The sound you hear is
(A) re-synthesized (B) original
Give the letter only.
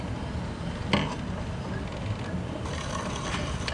B